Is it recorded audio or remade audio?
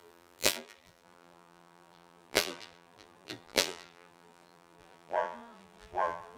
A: remade